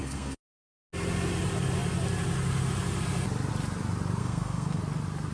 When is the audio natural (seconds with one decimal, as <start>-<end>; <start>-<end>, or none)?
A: 0.7-4.2; 4.8-5.3